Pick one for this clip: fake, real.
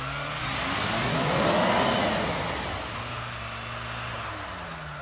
real